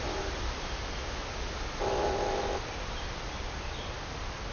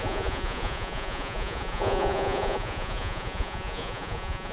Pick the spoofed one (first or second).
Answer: second